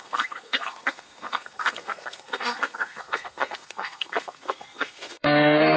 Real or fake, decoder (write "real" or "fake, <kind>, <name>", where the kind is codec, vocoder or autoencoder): fake, codec, SNAC